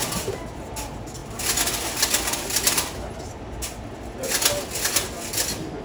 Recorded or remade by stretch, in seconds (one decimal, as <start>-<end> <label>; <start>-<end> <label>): 0.0-5.8 recorded